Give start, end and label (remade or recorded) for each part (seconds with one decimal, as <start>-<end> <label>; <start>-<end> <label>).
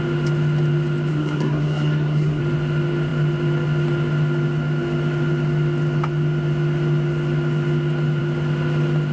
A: 0.0-1.1 recorded; 1.1-2.4 remade; 2.4-9.1 recorded